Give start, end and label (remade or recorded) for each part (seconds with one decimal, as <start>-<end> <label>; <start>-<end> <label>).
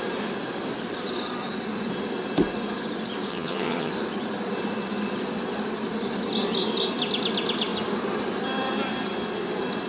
0.0-3.3 recorded; 3.3-3.9 remade; 3.9-9.9 recorded